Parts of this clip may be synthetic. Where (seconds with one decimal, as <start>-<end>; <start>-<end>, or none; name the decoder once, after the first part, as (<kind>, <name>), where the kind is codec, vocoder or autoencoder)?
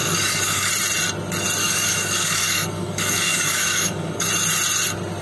0.0-0.7 (codec, DAC); 1.6-4.3